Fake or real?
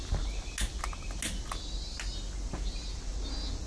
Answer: real